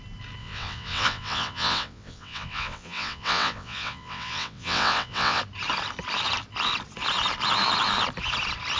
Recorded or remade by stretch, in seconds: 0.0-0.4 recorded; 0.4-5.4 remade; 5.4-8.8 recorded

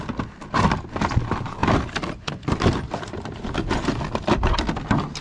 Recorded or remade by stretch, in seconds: 0.0-5.2 recorded

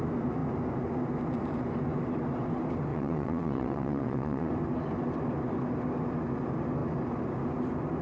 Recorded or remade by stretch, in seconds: 0.0-2.9 recorded; 2.9-4.5 remade; 4.5-8.0 recorded

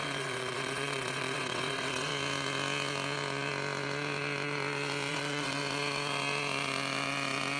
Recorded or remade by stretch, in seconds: 0.0-2.1 remade; 2.1-5.1 recorded; 5.1-5.6 remade; 5.6-7.6 recorded

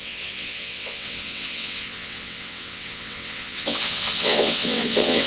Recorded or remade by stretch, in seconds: 0.0-5.3 remade

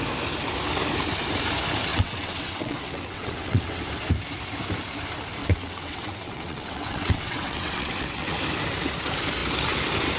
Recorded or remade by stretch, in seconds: 0.0-1.9 recorded; 1.9-3.8 remade; 3.8-5.4 recorded; 5.4-8.4 remade; 8.4-10.2 recorded

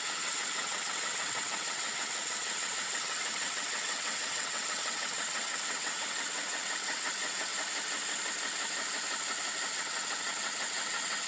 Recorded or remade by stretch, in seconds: 0.0-7.5 remade; 7.5-9.7 recorded; 9.7-11.3 remade